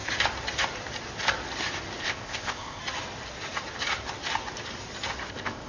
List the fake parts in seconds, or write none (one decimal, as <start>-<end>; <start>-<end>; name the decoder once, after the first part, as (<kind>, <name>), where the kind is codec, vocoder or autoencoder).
2.0-2.8 (codec, ZipCodec); 5.3-5.7